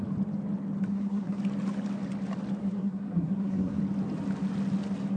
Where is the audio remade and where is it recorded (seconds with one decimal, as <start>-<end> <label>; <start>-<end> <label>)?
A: 0.0-0.9 recorded; 0.9-1.4 remade; 1.4-2.6 recorded; 2.6-3.8 remade; 3.8-5.2 recorded